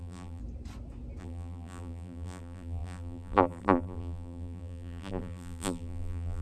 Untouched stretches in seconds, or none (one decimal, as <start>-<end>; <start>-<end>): 0.4-1.2